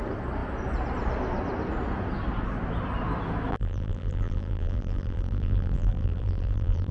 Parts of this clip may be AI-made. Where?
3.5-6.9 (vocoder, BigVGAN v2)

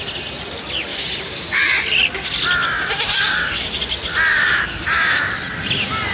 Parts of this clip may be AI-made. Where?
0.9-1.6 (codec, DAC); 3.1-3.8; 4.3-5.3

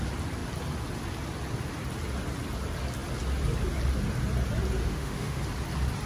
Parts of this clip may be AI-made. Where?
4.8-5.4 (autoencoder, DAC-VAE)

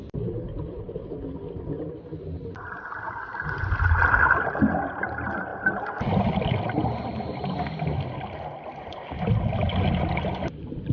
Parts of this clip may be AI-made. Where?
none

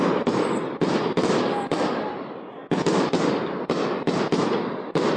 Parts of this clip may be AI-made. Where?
none

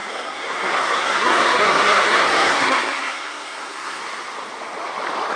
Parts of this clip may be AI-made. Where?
0.0-4.0 (codec, SNAC)